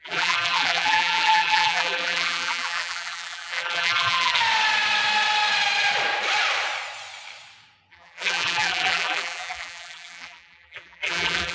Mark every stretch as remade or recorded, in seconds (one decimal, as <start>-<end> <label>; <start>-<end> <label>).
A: 0.0-4.4 remade; 4.4-7.9 recorded; 7.9-11.5 remade